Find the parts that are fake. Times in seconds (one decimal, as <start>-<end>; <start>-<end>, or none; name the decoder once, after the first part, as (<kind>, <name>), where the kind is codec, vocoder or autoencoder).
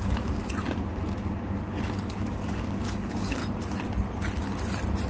0.0-0.4 (codec, DAC); 2.1-3.4